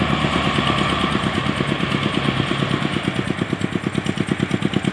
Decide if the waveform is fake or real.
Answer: real